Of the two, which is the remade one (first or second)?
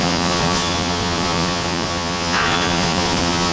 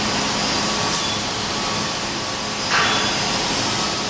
first